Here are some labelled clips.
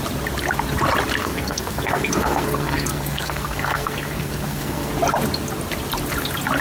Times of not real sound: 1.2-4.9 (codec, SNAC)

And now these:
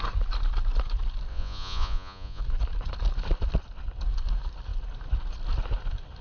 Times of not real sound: 1.3-2.4 (vocoder, Vocos)

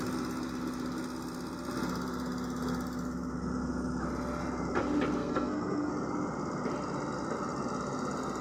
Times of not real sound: 5.2-5.9 (codec, SNAC)

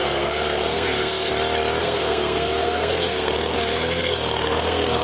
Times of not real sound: 0.0-1.3 (codec, SNAC); 1.8-5.0

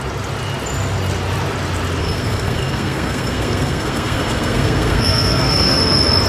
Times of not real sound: 2.0-5.8 (codec, SNAC)

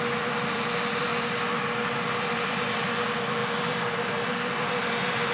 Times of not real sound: 0.0-1.1 (vocoder, BigVGAN v2); 2.2-5.3

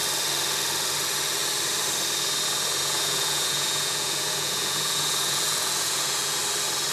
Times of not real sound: 2.8-6.4 (vocoder, Vocos)

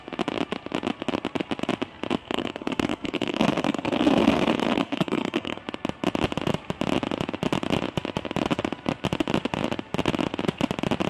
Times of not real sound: 2.2-5.6 (codec, SNAC)